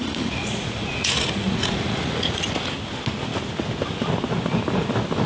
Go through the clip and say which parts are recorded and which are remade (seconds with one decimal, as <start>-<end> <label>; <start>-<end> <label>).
0.0-2.5 remade; 2.5-5.3 recorded